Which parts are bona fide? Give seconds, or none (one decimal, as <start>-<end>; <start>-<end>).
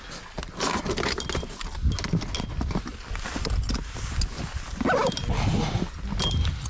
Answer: 0.0-6.7